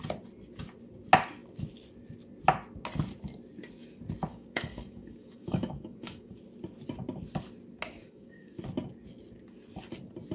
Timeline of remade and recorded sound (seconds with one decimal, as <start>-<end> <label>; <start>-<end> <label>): 0.0-4.3 recorded; 4.3-6.4 remade; 6.4-8.0 recorded; 8.0-8.6 remade; 8.6-10.3 recorded